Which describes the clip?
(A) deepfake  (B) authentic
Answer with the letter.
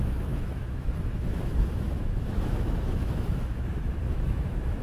A